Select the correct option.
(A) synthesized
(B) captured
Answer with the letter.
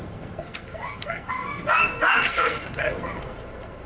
A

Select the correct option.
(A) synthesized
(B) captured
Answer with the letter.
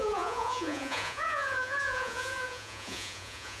A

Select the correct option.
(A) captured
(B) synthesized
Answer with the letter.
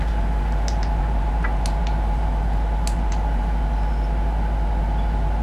A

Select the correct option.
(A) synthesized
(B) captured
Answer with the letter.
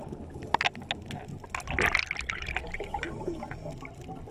B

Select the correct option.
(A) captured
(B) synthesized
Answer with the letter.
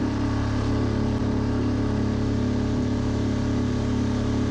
A